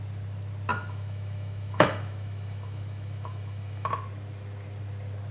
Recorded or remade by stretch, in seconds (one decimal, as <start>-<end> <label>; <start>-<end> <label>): 0.0-0.7 recorded; 0.7-3.9 remade; 3.9-5.3 recorded